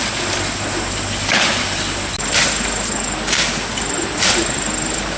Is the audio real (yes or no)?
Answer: yes